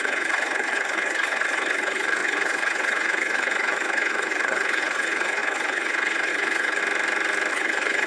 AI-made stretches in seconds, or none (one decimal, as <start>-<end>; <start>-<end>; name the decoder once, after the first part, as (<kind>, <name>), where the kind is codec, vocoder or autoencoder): 0.0-6.8 (codec, HILCodec); 7.5-8.1